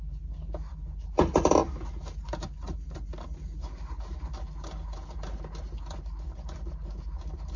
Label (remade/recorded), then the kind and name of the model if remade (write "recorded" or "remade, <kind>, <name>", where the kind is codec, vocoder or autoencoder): recorded